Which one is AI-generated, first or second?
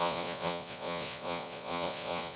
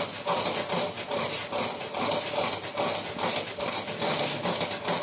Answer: first